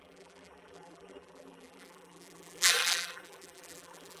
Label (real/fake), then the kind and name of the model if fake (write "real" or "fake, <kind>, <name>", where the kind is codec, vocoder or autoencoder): fake, vocoder, BigVGAN v2